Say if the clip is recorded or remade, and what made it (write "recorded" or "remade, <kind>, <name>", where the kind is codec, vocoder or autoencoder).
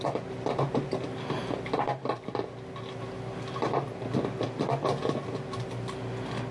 recorded